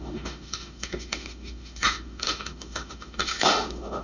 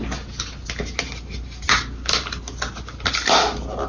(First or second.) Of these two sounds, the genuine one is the second